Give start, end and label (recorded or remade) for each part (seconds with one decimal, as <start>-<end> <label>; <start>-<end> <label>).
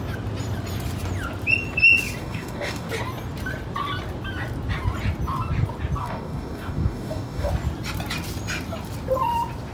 0.0-2.2 recorded; 2.2-2.9 remade; 2.9-6.0 recorded; 6.0-7.5 remade; 7.5-9.7 recorded